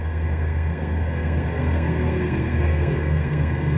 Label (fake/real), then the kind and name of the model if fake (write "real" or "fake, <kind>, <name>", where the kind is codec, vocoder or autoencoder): fake, codec, SNAC